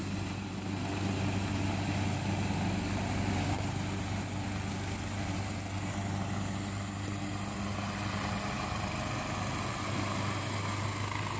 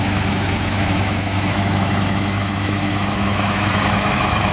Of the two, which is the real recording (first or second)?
first